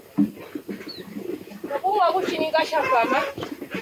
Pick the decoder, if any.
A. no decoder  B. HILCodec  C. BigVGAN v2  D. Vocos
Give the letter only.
A